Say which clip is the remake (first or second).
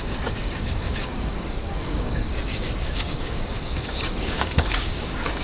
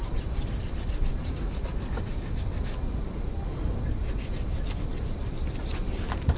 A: first